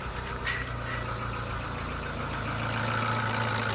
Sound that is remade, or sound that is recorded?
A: recorded